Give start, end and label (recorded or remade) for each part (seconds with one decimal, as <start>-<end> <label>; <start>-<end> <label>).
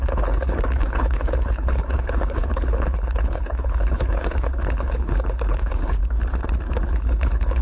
0.0-6.0 remade; 6.0-6.8 recorded; 6.8-7.6 remade